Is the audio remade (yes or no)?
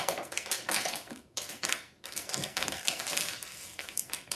yes